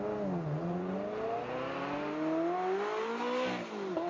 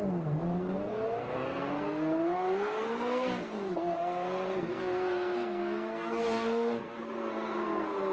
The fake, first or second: second